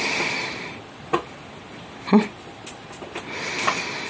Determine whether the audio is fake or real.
real